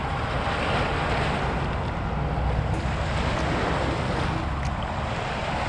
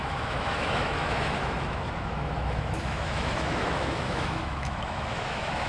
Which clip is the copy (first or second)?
second